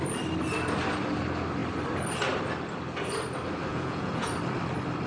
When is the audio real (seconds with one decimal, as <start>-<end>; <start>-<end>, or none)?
0.0-3.7; 4.3-5.1